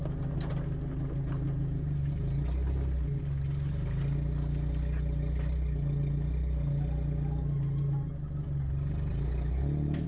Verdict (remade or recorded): recorded